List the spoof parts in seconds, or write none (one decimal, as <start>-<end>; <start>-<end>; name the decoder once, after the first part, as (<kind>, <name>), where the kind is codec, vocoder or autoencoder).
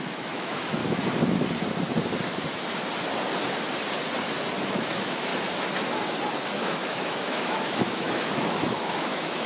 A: 0.0-0.8 (autoencoder, DAC-VAE); 4.7-5.3; 6.5-9.5